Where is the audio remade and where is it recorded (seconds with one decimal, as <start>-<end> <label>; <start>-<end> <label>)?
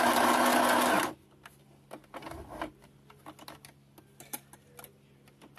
0.0-5.6 recorded